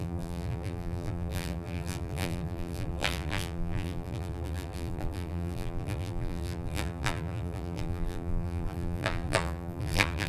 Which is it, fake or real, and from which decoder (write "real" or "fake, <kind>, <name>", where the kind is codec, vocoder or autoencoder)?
fake, vocoder, BigVGAN v2